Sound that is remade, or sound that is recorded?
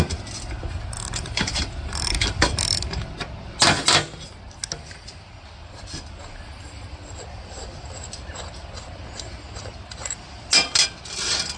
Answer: recorded